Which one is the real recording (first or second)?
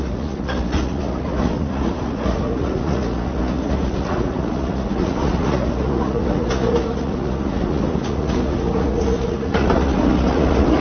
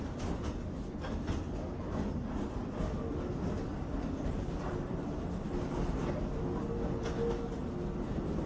second